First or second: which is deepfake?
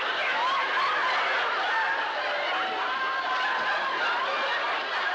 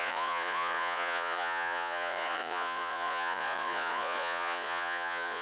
second